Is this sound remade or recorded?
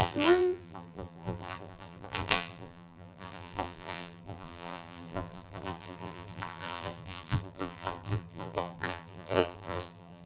remade